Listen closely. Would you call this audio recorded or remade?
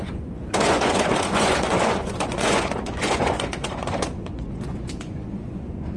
remade